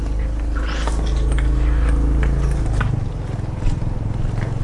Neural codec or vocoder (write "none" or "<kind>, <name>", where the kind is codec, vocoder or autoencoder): none